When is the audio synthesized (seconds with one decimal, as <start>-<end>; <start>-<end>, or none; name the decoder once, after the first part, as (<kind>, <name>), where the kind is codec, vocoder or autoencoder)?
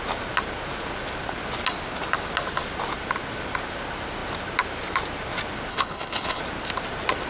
5.7-6.4 (codec, HILCodec)